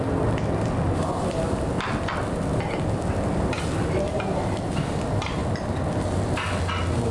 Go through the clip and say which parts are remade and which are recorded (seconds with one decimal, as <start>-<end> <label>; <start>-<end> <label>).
0.0-7.1 recorded